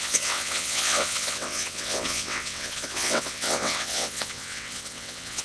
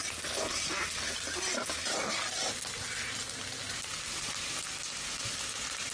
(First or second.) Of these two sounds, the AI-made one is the first